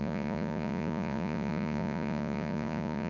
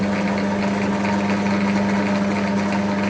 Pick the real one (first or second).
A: second